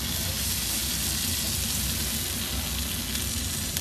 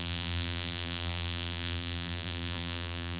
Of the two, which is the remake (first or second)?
second